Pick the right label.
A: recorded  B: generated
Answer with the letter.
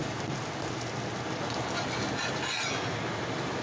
A